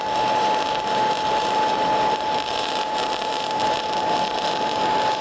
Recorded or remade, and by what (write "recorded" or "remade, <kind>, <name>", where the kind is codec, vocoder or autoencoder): recorded